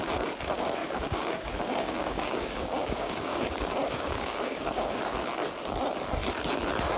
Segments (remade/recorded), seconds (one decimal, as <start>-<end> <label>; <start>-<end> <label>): 0.0-0.8 recorded; 0.8-5.0 remade; 5.0-7.0 recorded